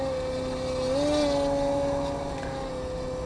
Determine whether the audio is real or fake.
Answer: real